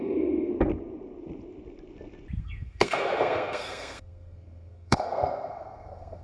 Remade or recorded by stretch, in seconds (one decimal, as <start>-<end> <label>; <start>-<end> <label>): 0.0-0.5 remade; 0.5-2.4 recorded; 2.4-6.2 remade